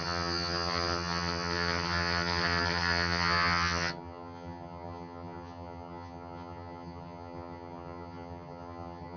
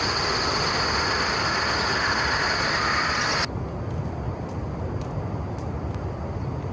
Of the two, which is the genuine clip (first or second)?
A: second